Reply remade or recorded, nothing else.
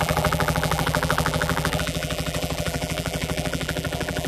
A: remade